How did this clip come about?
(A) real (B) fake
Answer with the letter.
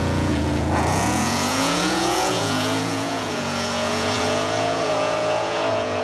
B